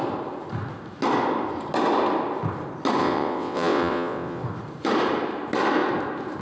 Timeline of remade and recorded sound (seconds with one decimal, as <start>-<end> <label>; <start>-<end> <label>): 0.0-3.0 recorded; 3.0-4.4 remade; 4.4-6.4 recorded